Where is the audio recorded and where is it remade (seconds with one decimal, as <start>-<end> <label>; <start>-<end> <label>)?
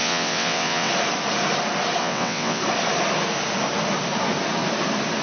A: 0.0-0.9 remade; 0.9-2.0 recorded; 2.0-2.6 remade; 2.6-5.2 recorded